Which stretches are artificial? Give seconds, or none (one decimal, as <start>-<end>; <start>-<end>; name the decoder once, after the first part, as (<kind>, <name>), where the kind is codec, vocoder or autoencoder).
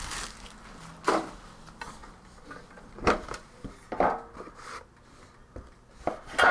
2.0-3.7 (vocoder, BigVGAN v2)